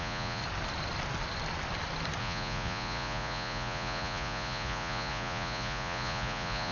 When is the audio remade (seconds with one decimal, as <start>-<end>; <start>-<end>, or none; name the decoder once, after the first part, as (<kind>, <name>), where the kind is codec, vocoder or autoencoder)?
0.0-0.4 (vocoder, Vocos); 2.2-6.7